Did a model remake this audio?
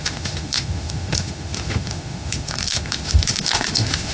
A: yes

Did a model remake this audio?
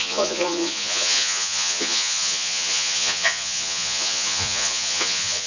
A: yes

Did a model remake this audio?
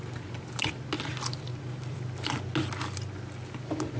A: no